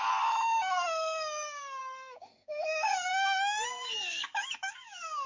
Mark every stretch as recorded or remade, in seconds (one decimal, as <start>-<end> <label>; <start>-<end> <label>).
0.0-5.3 remade